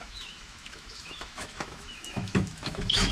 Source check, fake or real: fake